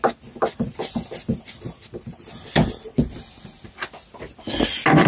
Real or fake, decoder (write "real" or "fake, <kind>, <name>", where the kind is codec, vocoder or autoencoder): real